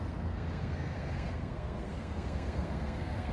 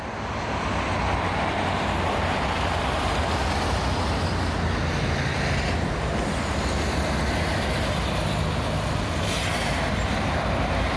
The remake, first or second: first